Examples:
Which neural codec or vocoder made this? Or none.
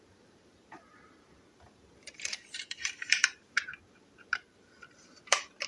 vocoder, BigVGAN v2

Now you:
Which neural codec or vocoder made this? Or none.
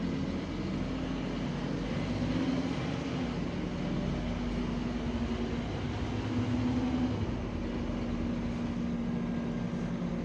none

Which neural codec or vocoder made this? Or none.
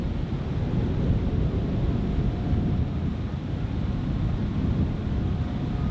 none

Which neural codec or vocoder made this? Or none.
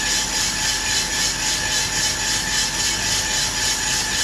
none